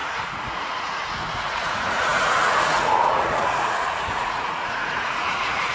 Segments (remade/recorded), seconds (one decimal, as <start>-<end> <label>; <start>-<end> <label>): 0.0-5.7 remade